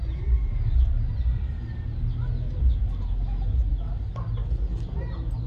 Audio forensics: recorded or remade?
recorded